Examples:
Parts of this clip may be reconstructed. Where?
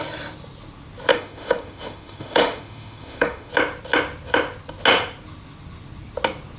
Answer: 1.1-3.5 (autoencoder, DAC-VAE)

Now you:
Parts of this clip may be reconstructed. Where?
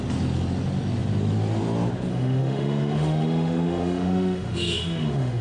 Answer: 2.1-5.4 (autoencoder, DAC-VAE)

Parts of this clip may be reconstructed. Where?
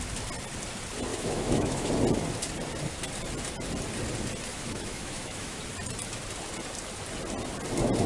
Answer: 1.1-1.9 (autoencoder, DAC-VAE); 4.5-5.6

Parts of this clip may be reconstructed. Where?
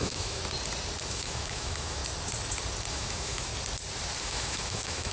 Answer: 0.0-0.4 (autoencoder, DAC-VAE); 1.1-2.0; 2.9-3.5; 4.2-5.1